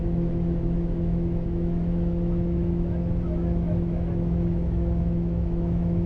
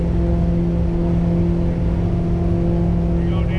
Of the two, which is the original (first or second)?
second